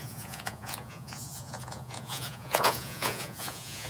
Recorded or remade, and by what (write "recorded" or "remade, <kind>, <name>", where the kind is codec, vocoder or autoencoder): remade, vocoder, Vocos